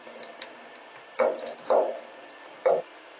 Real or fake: real